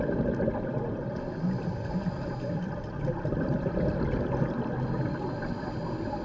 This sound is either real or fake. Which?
real